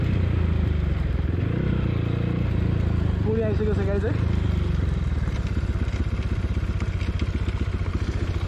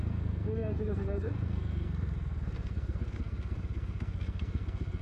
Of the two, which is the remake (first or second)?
second